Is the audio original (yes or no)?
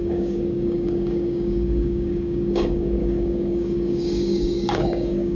no